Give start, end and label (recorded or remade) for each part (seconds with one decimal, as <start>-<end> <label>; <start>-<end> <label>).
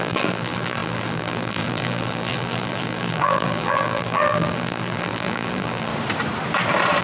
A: 0.0-5.9 remade; 5.9-7.0 recorded